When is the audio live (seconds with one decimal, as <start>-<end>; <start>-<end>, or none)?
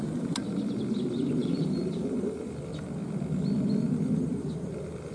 0.0-1.4; 2.5-5.1